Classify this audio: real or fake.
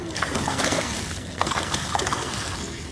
fake